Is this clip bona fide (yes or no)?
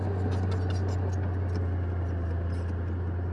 yes